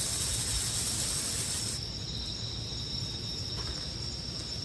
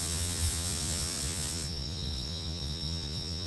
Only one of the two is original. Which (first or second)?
first